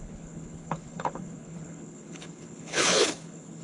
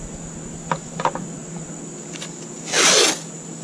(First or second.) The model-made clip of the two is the first